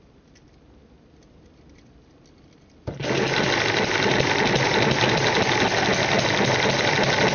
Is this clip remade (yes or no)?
no